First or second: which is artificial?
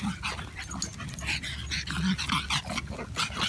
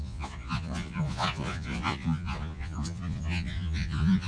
second